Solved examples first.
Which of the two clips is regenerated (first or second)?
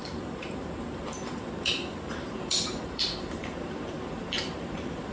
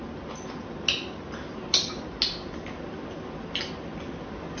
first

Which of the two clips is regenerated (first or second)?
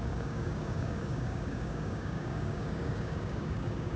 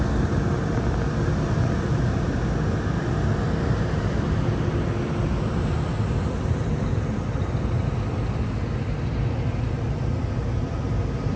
first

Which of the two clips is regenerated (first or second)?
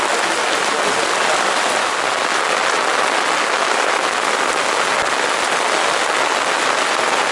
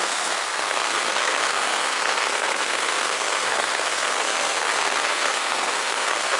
second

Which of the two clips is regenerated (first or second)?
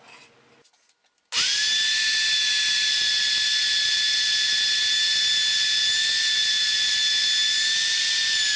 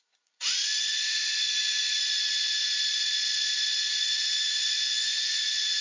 second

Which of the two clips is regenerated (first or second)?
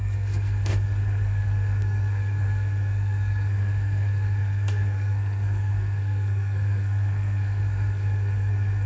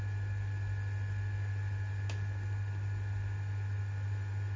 first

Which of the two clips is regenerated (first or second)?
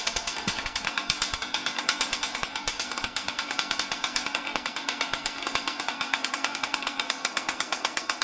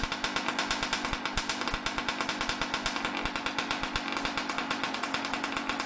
first